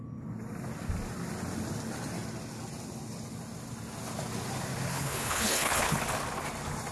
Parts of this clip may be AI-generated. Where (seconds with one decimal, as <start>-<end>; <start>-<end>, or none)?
4.9-6.0